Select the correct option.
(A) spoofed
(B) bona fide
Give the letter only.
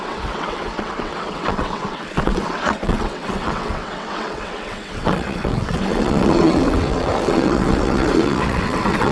A